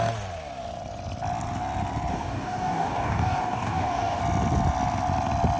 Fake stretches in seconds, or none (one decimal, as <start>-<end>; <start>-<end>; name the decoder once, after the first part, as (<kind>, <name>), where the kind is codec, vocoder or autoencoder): 2.1-4.2 (codec, DAC)